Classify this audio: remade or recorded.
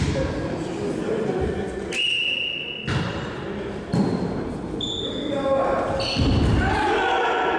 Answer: recorded